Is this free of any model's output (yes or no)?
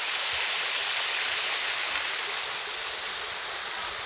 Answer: yes